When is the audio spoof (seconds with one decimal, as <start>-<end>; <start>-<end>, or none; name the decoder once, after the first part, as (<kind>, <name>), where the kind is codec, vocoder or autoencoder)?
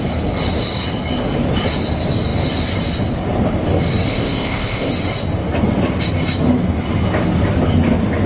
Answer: 4.1-4.9 (codec, ZipCodec)